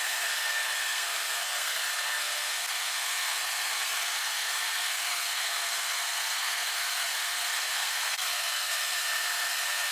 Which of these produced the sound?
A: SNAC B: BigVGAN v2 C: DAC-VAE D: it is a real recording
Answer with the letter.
A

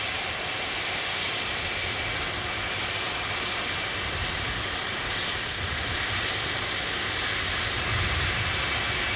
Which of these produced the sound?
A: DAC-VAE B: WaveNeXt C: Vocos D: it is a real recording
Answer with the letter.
D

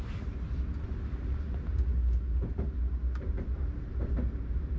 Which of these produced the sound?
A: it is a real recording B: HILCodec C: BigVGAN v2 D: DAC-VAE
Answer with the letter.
A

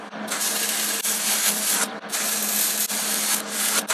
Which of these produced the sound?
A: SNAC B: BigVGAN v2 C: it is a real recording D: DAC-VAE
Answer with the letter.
C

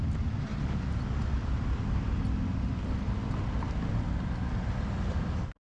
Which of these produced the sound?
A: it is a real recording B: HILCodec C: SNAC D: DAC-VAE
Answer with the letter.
A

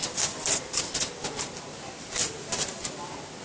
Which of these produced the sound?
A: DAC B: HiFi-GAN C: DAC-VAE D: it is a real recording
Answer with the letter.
D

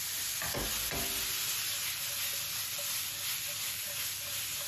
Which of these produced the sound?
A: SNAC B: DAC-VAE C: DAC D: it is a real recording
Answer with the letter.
D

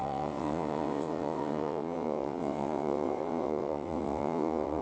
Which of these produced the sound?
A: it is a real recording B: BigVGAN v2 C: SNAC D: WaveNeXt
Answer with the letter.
D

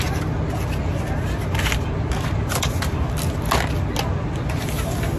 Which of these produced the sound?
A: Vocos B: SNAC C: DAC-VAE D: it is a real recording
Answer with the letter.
D